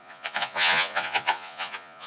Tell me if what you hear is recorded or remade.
remade